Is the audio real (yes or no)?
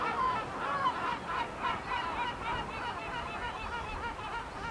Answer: yes